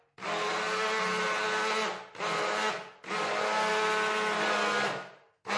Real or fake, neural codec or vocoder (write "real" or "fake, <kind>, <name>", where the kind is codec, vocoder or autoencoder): real